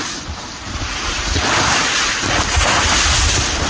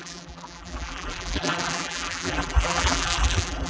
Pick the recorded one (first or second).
first